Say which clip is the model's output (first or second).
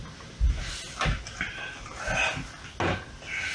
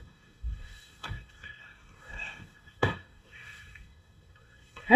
second